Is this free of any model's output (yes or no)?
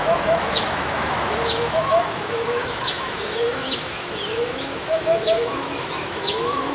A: no